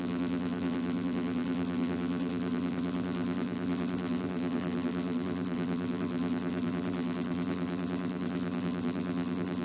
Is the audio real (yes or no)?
no